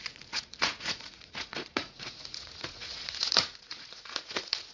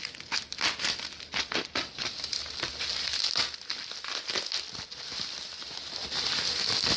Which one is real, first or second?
second